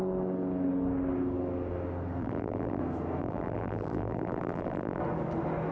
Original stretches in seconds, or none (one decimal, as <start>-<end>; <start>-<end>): 0.0-2.2; 2.8-3.2; 5.0-5.7